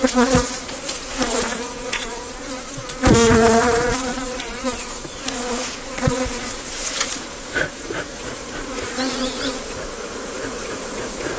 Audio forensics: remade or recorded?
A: remade